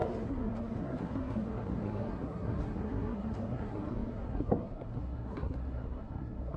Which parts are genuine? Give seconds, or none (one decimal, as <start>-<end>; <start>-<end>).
none

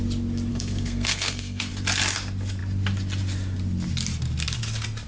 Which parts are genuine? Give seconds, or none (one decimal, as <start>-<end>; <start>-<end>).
0.0-0.5; 1.7-5.1